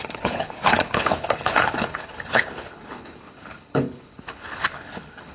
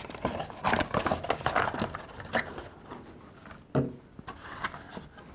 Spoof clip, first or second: first